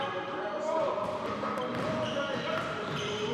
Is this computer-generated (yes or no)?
yes